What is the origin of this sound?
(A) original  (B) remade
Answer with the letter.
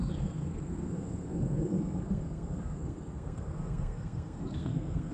B